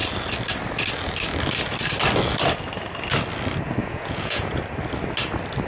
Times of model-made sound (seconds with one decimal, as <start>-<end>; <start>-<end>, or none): 3.8-4.6